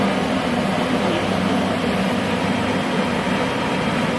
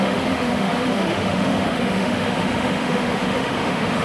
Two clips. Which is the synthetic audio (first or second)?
second